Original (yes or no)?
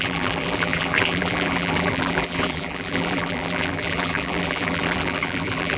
no